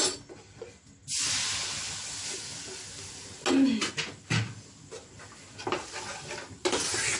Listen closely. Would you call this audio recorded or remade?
recorded